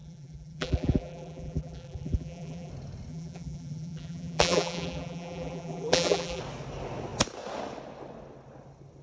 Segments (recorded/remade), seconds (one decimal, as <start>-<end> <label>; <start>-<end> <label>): 0.0-2.7 remade; 2.7-3.1 recorded; 3.1-6.4 remade; 6.4-9.0 recorded